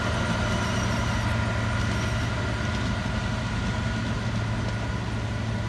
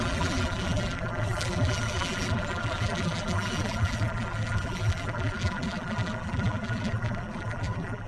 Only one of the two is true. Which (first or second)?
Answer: first